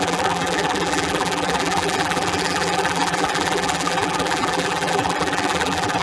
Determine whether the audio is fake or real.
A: fake